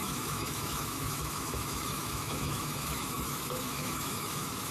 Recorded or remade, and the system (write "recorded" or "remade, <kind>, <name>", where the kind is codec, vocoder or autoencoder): remade, autoencoder, DAC-VAE